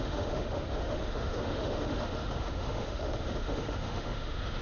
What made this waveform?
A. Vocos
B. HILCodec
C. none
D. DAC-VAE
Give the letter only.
D